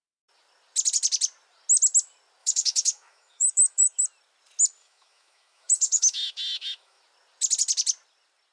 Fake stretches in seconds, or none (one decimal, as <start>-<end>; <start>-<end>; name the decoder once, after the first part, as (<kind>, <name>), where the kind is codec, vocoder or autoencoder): 2.4-4.0 (autoencoder, DAC-VAE); 4.8-7.0